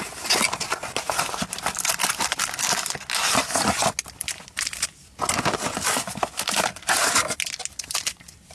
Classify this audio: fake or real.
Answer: real